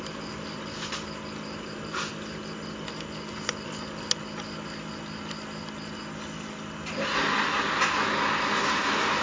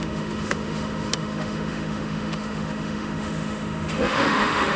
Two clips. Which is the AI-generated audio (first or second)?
second